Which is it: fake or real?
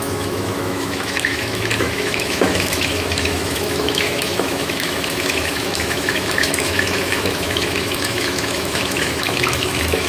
fake